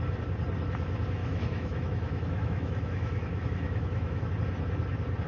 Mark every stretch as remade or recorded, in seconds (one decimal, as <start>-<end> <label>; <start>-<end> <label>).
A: 0.0-1.2 recorded; 1.2-4.3 remade; 4.3-5.3 recorded